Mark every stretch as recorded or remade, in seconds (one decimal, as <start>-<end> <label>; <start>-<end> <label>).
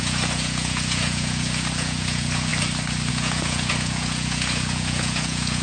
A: 0.0-2.5 remade; 2.5-3.1 recorded; 3.1-5.6 remade